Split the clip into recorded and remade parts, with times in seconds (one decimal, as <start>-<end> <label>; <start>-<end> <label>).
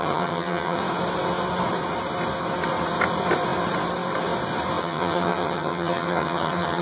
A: 0.0-0.8 remade; 0.8-4.8 recorded; 4.8-6.8 remade